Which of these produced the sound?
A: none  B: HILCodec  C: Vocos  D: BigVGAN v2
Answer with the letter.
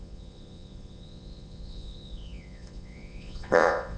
C